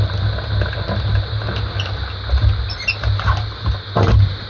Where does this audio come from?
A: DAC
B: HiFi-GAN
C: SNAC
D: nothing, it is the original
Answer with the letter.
D